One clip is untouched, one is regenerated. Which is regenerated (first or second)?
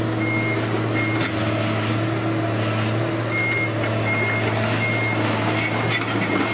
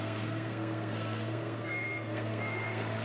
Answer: second